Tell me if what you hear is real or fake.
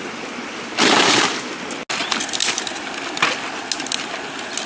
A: real